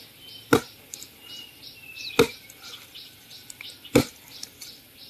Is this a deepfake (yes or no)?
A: no